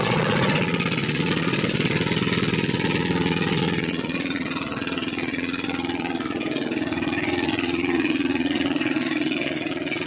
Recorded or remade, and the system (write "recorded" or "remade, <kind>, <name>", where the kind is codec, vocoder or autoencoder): remade, vocoder, Vocos